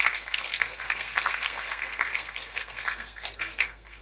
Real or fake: fake